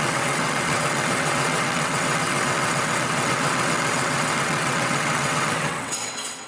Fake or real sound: fake